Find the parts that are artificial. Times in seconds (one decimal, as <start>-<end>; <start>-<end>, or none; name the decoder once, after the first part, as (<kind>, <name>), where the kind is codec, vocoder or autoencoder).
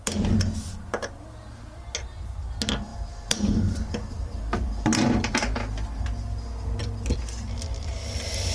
2.9-6.8 (vocoder, BigVGAN v2)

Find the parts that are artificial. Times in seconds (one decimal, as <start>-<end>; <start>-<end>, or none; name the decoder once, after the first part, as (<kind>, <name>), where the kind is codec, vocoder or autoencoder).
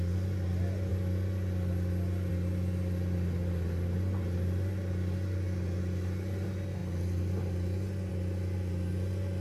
none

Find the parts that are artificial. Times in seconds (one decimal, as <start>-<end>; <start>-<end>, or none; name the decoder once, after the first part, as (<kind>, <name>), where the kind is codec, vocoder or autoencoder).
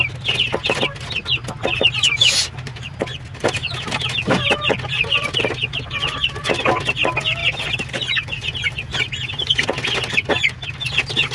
none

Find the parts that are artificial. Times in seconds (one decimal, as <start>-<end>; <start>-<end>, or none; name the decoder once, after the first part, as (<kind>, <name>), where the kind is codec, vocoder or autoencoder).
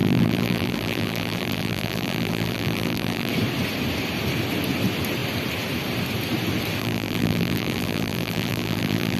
0.0-3.3 (vocoder, BigVGAN v2); 6.8-9.2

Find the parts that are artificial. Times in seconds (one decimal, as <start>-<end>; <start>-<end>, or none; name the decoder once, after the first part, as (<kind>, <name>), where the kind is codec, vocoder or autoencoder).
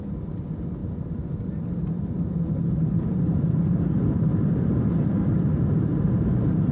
0.8-4.8 (vocoder, BigVGAN v2); 5.9-6.7